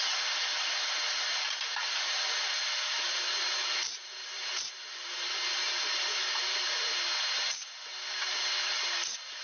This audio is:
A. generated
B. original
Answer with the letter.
B